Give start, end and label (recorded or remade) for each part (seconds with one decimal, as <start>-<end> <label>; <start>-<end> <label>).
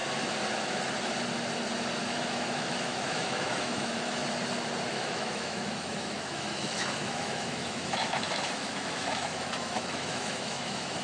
0.0-2.0 recorded; 2.0-4.2 remade; 4.2-4.9 recorded; 4.9-11.0 remade